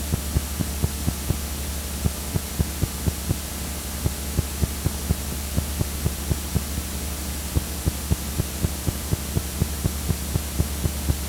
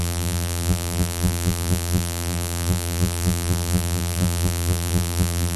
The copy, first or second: second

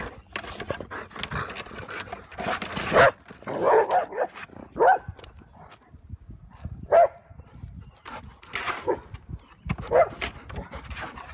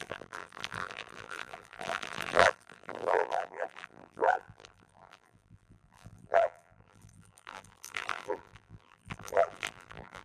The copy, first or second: second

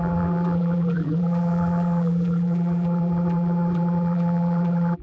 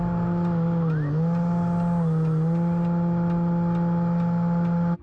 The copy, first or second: first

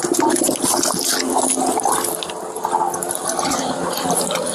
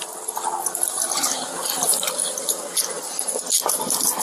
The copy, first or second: second